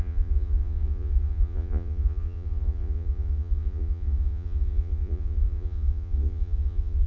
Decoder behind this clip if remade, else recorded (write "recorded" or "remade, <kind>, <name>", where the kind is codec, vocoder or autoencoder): remade, vocoder, Vocos